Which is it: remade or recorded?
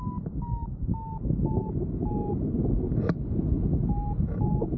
recorded